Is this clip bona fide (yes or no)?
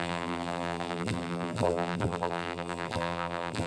no